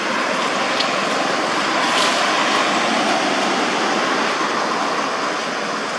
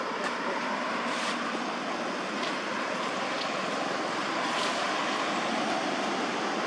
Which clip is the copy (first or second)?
second